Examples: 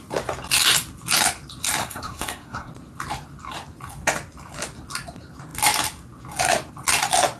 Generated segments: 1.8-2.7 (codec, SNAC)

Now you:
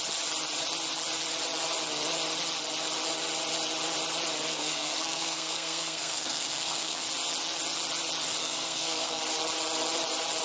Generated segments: 4.5-7.0 (codec, SNAC); 8.4-9.2